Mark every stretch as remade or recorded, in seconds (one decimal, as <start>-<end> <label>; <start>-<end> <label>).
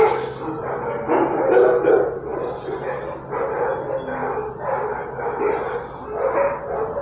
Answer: 0.0-7.0 recorded